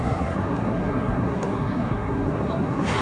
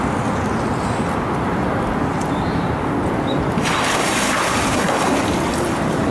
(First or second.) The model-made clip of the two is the first